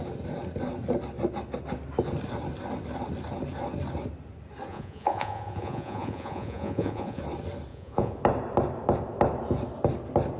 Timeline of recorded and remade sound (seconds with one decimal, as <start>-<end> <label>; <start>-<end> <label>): 0.0-4.7 recorded; 4.7-7.2 remade; 7.2-7.7 recorded; 7.7-8.2 remade; 8.2-10.4 recorded

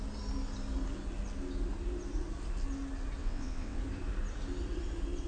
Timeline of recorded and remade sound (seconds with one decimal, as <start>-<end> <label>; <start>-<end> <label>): 0.0-3.2 recorded; 3.2-3.8 remade; 3.8-5.3 recorded